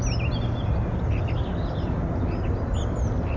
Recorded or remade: recorded